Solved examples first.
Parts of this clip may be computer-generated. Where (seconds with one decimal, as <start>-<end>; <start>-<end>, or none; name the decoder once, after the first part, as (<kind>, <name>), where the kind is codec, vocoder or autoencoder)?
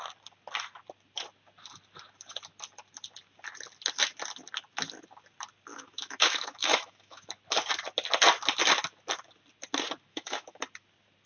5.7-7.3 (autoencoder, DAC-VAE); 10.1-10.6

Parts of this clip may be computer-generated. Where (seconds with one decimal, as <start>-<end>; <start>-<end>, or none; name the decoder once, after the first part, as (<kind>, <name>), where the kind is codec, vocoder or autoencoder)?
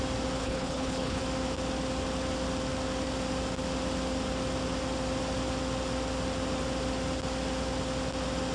0.4-1.2 (codec, HILCodec)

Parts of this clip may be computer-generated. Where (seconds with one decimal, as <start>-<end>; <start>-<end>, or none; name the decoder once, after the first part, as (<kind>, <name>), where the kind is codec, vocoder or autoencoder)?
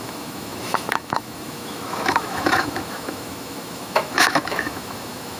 0.0-5.4 (autoencoder, DAC-VAE)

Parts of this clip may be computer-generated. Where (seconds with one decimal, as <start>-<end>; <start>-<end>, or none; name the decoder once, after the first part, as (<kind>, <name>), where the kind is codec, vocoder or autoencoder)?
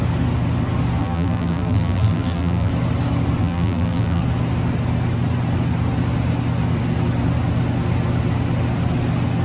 1.0-2.7 (vocoder, BigVGAN v2); 3.4-4.2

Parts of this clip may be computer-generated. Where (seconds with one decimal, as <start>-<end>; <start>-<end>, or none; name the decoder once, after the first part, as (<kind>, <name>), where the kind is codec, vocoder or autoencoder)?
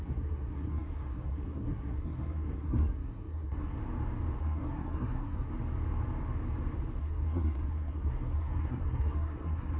0.0-3.8 (codec, SNAC); 4.4-5.5; 7.0-9.8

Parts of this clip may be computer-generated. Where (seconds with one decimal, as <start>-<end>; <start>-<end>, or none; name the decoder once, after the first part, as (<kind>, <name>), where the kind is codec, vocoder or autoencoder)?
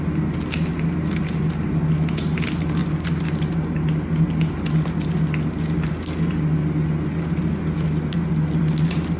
none